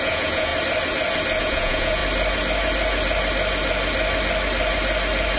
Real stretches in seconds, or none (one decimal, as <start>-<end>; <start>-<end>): 0.5-1.4; 2.0-5.4